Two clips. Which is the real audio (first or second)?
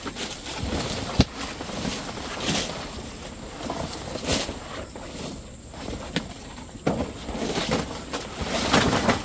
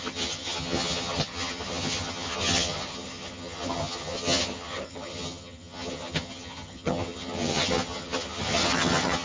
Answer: first